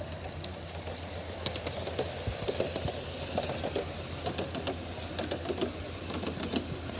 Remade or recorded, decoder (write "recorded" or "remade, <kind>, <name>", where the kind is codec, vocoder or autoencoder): recorded